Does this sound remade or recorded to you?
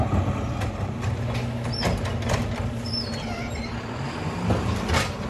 recorded